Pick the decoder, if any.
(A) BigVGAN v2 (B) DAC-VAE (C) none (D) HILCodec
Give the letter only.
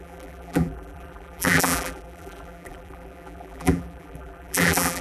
A